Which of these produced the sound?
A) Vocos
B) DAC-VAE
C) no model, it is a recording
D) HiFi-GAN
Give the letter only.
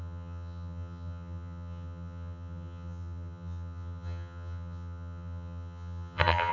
D